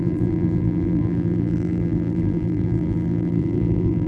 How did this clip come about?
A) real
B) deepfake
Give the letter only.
B